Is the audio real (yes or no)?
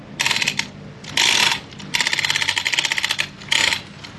yes